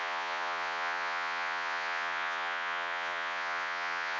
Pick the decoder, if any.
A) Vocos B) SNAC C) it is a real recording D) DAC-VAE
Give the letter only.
A